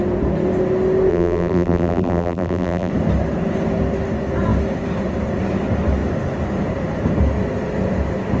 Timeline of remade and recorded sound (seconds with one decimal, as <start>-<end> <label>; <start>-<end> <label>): 0.0-1.1 recorded; 1.1-2.9 remade; 2.9-8.4 recorded